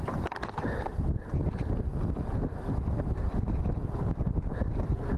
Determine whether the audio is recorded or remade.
recorded